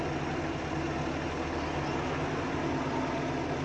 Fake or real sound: real